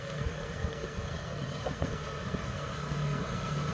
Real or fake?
fake